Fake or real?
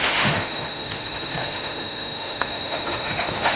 fake